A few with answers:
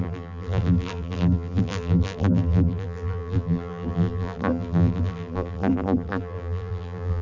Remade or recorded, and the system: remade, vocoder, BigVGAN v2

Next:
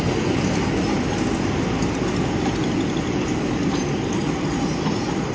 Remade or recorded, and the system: recorded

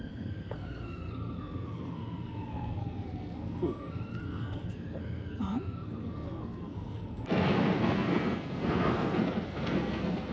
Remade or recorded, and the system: remade, codec, SNAC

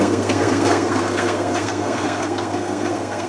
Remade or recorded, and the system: remade, codec, SNAC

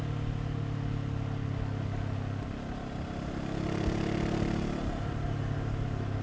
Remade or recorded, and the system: recorded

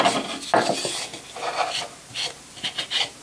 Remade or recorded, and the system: recorded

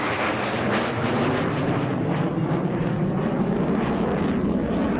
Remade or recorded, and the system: recorded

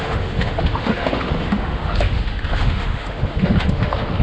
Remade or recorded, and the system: remade, autoencoder, DAC-VAE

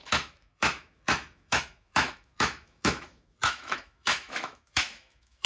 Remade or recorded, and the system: remade, autoencoder, DAC-VAE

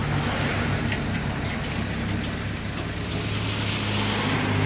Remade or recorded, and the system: recorded